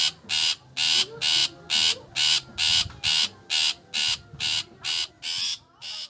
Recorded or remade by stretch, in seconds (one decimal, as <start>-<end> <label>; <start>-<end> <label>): 0.0-6.1 recorded